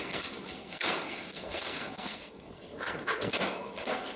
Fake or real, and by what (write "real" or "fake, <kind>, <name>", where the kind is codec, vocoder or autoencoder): fake, codec, SNAC